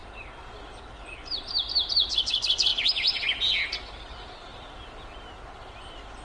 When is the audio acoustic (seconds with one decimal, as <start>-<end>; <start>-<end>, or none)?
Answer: 0.0-4.5; 5.2-6.2